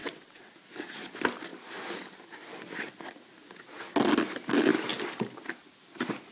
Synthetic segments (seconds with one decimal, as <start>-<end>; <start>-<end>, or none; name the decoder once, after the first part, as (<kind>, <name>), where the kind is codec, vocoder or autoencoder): 0.0-0.5 (vocoder, WaveNeXt)